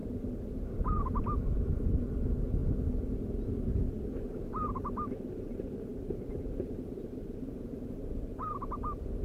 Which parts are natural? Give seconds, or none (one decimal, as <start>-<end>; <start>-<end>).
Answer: 2.6-4.5